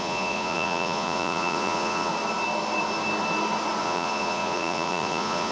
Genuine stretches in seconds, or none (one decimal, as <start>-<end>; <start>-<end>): 2.1-3.8